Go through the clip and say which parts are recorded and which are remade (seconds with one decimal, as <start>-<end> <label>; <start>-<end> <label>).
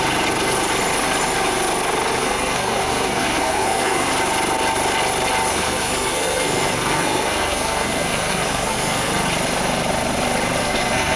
0.0-2.2 recorded; 2.2-4.1 remade; 4.1-5.5 recorded; 5.5-9.1 remade; 9.1-10.6 recorded; 10.6-11.2 remade